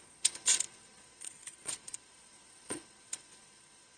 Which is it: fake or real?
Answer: fake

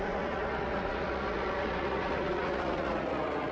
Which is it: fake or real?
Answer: fake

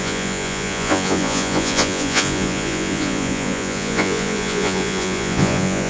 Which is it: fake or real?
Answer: fake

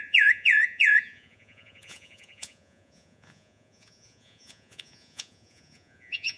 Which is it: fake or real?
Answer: fake